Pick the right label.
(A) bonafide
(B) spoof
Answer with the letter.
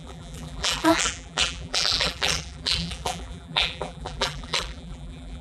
B